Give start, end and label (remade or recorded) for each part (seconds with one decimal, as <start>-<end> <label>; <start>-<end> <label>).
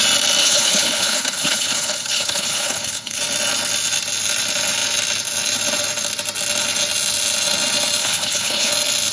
0.0-0.4 recorded; 0.4-3.2 remade; 3.2-8.0 recorded; 8.0-8.7 remade; 8.7-9.1 recorded